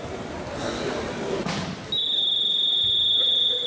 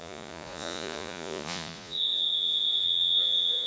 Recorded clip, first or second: first